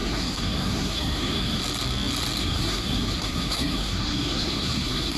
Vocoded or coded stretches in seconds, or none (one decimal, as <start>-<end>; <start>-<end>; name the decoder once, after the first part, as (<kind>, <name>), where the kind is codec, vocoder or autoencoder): 0.0-1.6 (codec, SNAC); 2.4-5.2